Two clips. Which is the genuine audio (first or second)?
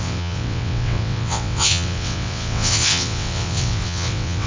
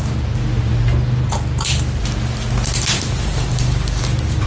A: second